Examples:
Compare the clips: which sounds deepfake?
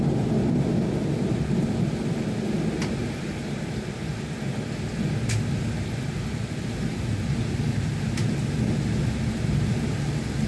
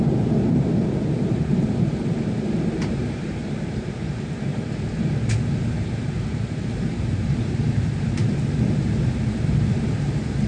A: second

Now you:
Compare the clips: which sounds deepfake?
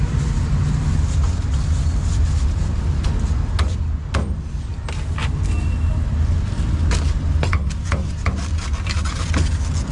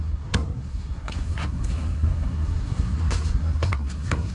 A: second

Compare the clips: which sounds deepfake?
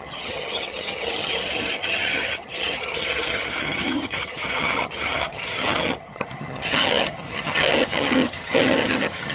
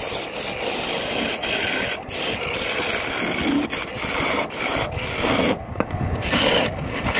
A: first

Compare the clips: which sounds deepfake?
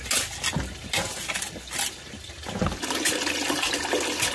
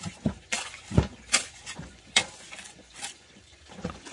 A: second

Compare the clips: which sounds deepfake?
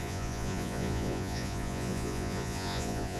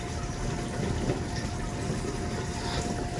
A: first